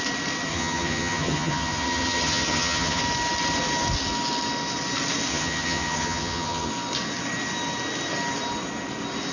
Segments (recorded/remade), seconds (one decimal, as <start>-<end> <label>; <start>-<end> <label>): 0.0-0.5 recorded; 0.5-3.0 remade; 3.0-5.3 recorded; 5.3-6.7 remade; 6.7-9.3 recorded